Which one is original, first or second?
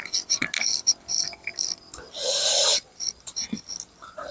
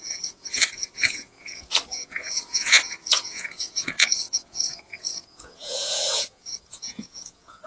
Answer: first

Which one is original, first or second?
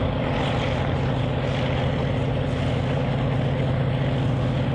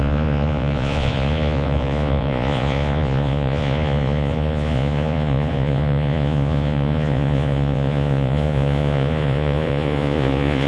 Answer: first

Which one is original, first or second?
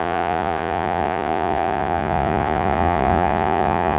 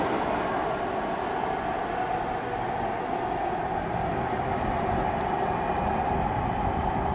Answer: second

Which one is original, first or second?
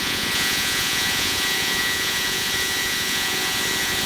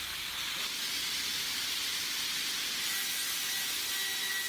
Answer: second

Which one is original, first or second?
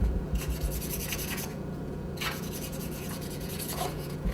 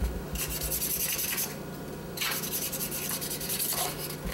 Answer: second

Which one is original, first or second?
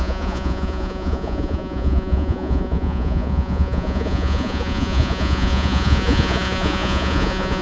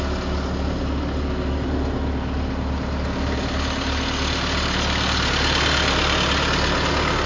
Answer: second